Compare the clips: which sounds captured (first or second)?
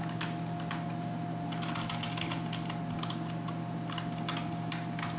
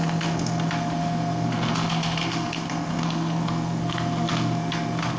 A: first